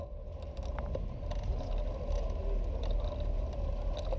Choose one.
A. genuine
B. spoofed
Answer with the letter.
A